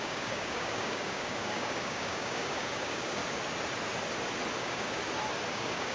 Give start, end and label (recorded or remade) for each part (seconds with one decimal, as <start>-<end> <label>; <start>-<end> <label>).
0.0-3.2 remade; 3.2-4.6 recorded; 4.6-5.0 remade; 5.0-5.5 recorded; 5.5-5.9 remade